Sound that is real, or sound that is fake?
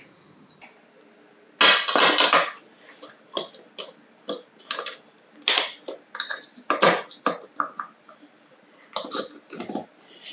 real